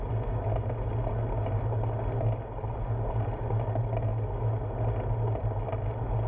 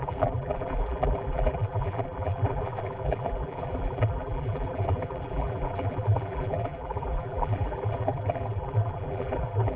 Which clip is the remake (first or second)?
second